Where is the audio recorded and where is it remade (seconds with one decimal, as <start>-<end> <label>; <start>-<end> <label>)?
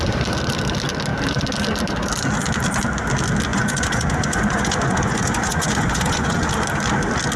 0.0-3.5 recorded; 3.5-6.5 remade; 6.5-7.4 recorded